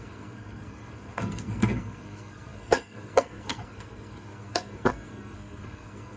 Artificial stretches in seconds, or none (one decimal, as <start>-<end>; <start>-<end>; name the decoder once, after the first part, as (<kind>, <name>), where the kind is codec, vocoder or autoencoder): 0.0-6.2 (codec, SNAC)